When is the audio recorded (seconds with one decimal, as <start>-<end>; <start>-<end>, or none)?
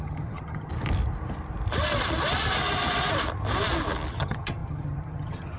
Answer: 0.7-4.1